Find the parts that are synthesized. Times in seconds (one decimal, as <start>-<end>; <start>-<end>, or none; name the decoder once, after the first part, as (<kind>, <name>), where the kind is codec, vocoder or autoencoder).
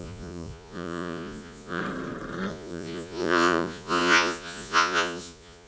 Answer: 0.0-1.8 (vocoder, Vocos); 2.5-5.7